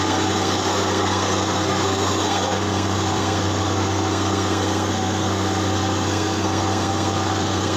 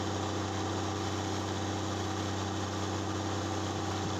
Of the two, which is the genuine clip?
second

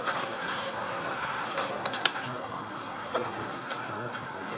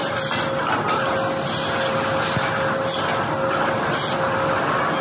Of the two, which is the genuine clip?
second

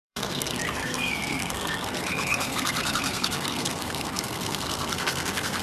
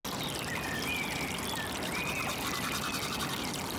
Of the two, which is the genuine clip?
second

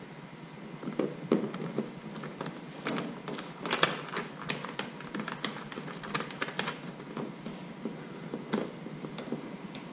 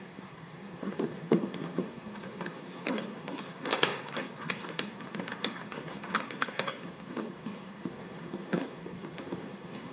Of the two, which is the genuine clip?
first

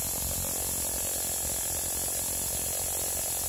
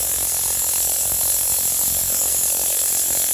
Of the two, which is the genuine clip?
first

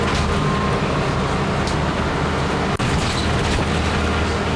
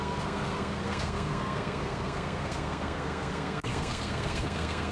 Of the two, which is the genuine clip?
first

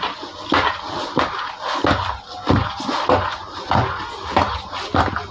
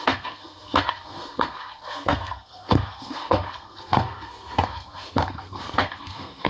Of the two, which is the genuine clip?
first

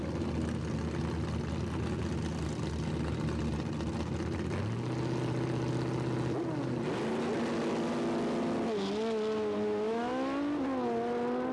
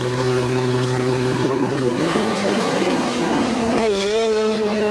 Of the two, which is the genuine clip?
first